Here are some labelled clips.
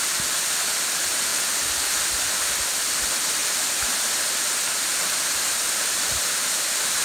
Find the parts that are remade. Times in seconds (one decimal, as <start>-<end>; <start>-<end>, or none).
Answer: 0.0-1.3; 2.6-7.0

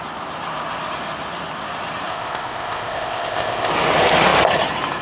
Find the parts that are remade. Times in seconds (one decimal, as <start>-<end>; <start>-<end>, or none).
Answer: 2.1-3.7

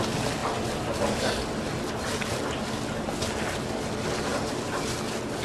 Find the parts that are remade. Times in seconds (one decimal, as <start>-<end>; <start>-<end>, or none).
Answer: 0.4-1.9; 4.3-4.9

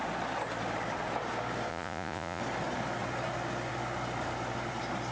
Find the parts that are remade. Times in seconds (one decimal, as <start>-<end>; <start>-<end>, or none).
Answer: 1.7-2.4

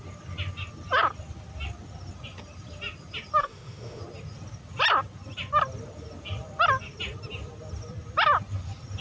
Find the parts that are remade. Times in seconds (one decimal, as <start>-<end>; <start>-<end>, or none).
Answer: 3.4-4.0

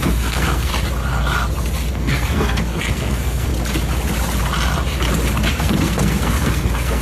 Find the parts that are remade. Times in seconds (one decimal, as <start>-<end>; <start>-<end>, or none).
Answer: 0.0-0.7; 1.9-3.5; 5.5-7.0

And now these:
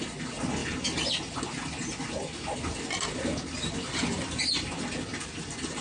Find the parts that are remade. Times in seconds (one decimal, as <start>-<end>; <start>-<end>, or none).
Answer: none

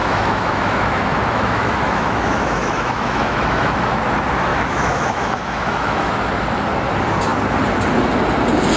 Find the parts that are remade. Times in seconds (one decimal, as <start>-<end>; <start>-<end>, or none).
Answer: 0.0-4.0; 4.5-6.1